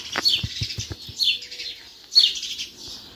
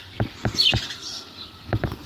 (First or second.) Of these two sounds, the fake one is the second